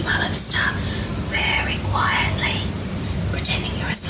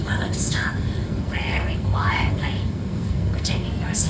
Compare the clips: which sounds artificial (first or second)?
second